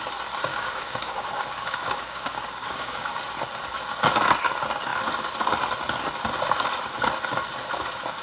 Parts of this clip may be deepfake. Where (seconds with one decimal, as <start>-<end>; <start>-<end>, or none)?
0.5-3.2